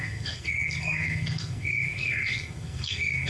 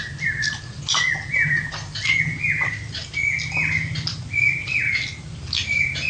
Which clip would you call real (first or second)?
second